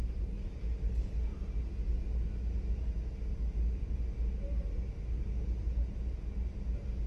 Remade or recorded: recorded